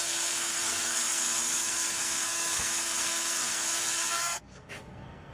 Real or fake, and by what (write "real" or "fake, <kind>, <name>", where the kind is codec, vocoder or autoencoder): fake, codec, SNAC